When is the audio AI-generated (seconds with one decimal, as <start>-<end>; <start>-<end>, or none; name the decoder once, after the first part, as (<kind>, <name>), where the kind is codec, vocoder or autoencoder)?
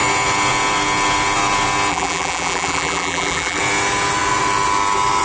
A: 1.9-3.6 (vocoder, BigVGAN v2)